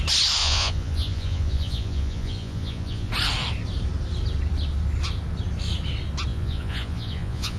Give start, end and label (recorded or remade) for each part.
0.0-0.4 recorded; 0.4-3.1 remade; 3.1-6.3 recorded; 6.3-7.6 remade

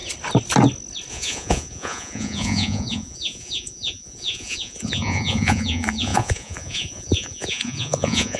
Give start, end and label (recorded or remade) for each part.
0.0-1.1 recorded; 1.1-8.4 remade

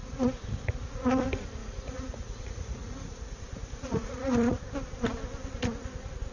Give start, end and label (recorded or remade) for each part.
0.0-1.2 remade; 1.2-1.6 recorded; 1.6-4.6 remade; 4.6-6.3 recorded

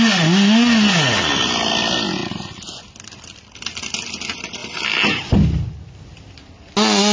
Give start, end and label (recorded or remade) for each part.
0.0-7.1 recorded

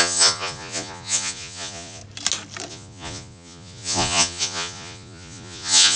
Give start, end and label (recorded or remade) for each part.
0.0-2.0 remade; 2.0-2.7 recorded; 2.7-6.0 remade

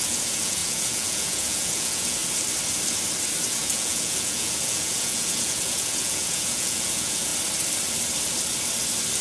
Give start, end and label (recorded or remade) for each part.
0.0-2.2 remade; 2.2-3.5 recorded; 3.5-7.3 remade; 7.3-9.2 recorded